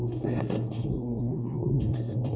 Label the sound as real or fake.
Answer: fake